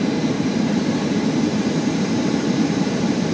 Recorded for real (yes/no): no